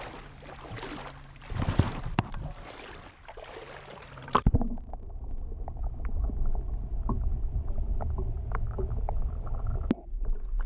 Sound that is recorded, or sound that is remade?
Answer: recorded